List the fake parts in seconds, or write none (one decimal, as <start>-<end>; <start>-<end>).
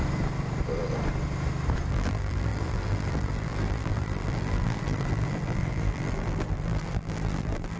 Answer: 1.9-7.8